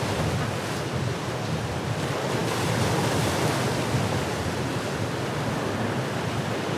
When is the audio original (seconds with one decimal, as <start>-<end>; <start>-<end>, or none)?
0.0-6.8